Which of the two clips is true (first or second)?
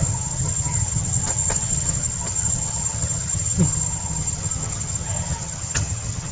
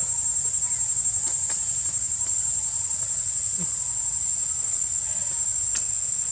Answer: second